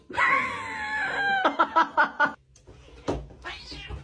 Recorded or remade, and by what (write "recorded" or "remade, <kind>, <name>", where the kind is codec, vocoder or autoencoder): recorded